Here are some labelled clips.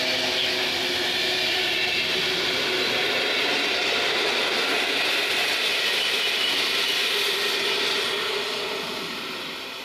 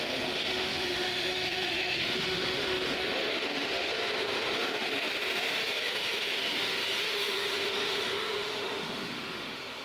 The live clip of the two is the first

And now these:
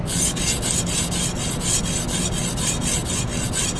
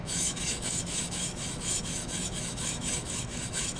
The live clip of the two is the first